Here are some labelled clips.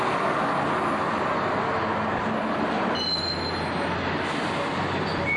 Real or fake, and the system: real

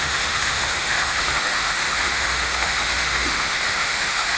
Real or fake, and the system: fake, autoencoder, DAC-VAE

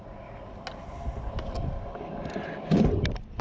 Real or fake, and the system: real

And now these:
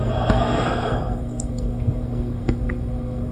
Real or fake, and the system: fake, codec, SNAC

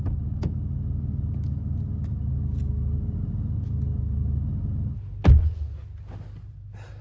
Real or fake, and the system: real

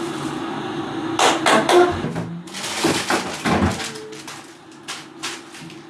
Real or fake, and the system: real